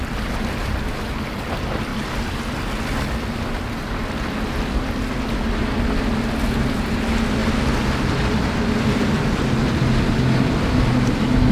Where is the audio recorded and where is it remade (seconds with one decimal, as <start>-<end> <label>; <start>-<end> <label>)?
0.0-11.5 recorded